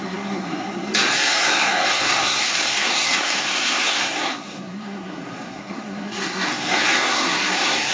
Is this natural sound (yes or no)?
no